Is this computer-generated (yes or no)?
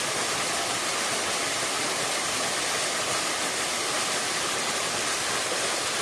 no